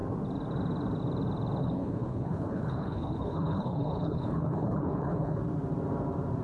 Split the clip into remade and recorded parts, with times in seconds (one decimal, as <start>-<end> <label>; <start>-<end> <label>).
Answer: 0.0-1.6 recorded; 1.6-5.4 remade; 5.4-6.4 recorded